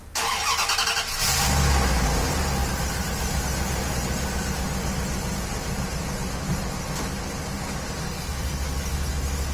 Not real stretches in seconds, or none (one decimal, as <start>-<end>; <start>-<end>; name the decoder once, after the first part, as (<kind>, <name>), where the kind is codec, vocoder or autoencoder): 2.6-3.4 (vocoder, BigVGAN v2)